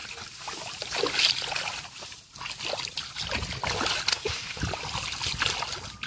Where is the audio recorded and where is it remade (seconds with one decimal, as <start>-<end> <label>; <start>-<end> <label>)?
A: 0.0-4.1 recorded; 4.1-4.6 remade; 4.6-6.1 recorded